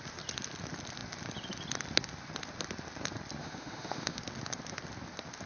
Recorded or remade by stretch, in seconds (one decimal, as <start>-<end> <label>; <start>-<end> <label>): 0.0-3.4 recorded; 3.4-4.2 remade; 4.2-5.5 recorded